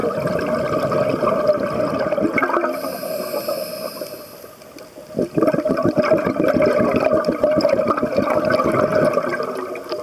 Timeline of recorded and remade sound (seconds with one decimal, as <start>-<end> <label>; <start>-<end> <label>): 0.0-10.0 recorded

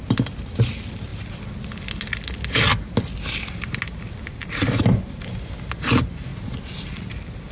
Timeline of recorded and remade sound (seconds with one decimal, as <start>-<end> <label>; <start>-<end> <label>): 0.0-6.3 recorded; 6.3-7.1 remade; 7.1-7.5 recorded